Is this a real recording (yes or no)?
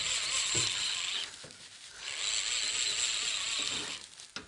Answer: yes